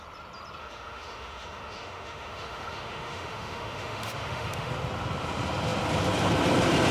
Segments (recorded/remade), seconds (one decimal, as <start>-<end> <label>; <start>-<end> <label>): 0.0-0.6 recorded; 0.6-4.7 remade; 4.7-6.9 recorded